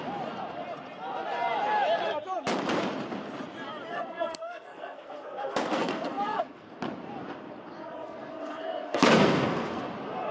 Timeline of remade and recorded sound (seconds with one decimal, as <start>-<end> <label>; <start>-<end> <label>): 0.0-3.9 recorded; 3.9-6.7 remade; 6.7-7.8 recorded; 7.8-9.8 remade; 9.8-10.3 recorded